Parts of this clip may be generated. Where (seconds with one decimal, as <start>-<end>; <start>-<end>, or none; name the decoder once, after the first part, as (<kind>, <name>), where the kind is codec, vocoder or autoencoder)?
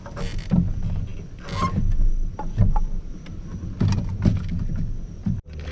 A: none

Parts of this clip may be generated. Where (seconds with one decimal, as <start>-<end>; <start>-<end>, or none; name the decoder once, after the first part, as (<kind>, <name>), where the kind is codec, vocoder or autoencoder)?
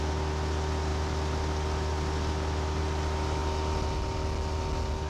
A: none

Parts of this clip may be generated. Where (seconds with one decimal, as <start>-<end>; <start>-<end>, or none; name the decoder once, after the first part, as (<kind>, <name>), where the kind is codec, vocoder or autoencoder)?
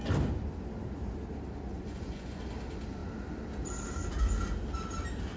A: 1.7-2.4 (vocoder, Vocos)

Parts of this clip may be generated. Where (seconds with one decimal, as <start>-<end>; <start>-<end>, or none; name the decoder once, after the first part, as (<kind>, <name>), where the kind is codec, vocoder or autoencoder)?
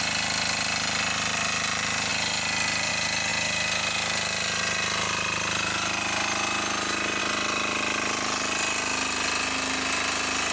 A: none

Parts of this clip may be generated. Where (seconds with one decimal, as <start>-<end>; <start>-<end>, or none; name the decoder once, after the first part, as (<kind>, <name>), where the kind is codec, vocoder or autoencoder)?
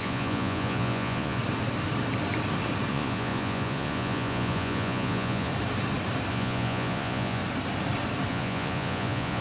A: 0.0-1.4 (vocoder, Vocos); 2.9-5.5; 6.3-7.4; 8.3-9.4